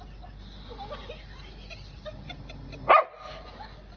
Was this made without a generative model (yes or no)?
yes